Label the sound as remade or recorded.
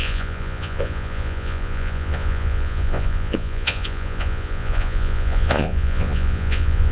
remade